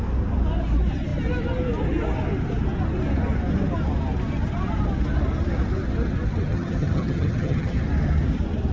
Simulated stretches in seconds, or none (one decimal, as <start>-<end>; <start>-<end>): 6.5-7.8